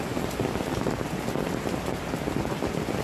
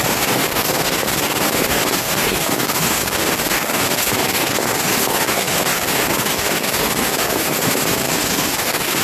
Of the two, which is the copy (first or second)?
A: second